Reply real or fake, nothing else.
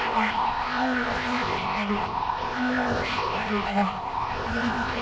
fake